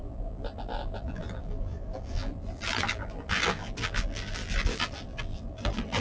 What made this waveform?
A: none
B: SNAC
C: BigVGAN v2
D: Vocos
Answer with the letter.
C